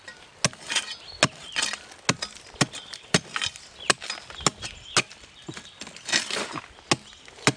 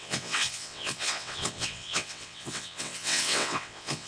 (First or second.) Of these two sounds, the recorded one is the first